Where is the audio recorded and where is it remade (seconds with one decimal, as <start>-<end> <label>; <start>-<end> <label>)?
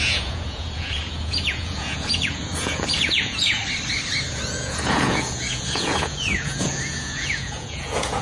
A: 0.0-3.6 remade; 3.6-4.3 recorded; 4.3-8.2 remade